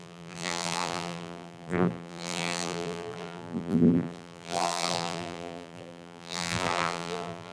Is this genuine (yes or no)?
no